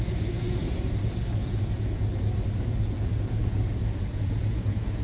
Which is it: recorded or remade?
remade